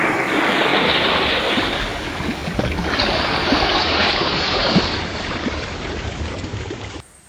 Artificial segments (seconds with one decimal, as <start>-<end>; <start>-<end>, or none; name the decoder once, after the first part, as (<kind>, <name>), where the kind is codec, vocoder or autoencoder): 0.0-0.7 (codec, DAC); 1.4-7.3